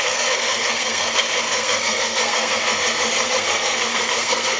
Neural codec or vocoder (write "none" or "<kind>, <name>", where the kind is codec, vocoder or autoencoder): codec, SNAC